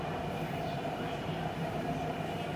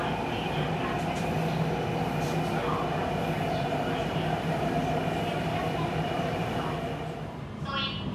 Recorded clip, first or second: second